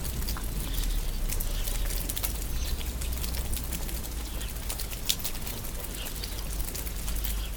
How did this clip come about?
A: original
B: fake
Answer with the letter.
A